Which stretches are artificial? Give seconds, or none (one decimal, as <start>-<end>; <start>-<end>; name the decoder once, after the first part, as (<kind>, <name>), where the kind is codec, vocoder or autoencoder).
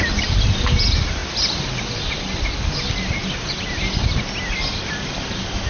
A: none